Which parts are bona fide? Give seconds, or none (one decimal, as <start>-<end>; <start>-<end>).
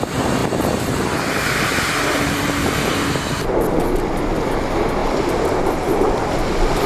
0.0-6.9